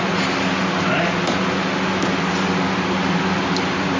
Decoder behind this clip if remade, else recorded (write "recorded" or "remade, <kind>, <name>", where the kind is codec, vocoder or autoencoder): recorded